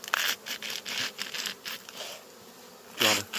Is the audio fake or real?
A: real